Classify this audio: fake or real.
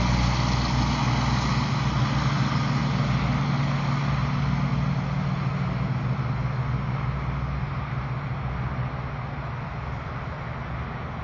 real